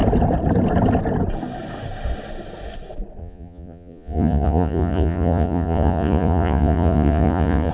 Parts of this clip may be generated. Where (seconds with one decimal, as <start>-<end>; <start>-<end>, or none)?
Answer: 3.2-7.7